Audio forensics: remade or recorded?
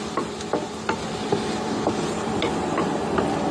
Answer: recorded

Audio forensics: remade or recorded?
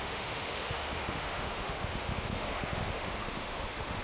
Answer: remade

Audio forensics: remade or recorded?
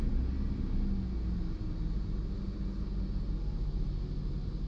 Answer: recorded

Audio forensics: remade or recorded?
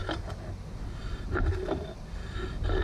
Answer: recorded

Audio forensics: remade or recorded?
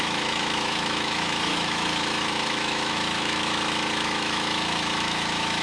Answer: remade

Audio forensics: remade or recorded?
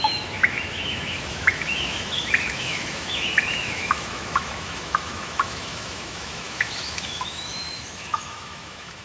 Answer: remade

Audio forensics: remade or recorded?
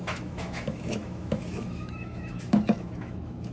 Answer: remade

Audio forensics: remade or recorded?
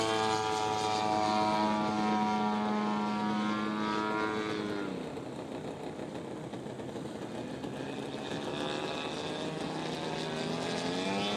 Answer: recorded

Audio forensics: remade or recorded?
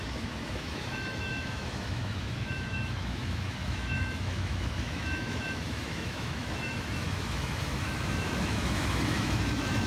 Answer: remade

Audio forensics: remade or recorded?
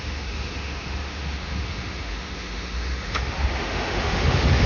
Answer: remade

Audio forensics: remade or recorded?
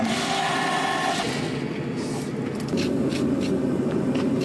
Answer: recorded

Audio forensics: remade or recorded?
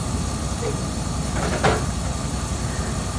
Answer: recorded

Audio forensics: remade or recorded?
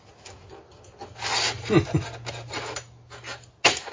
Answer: recorded